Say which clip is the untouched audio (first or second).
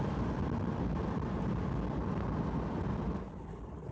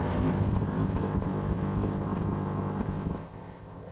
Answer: first